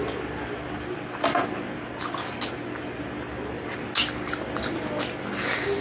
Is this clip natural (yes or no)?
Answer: yes